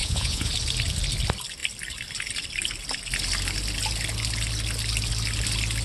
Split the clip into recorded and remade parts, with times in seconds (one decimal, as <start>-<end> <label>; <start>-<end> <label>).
0.0-0.5 remade; 0.5-5.8 recorded